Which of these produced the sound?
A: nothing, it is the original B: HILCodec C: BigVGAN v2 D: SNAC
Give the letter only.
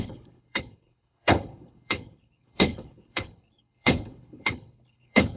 B